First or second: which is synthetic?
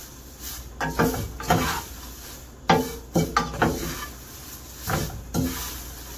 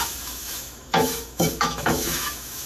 second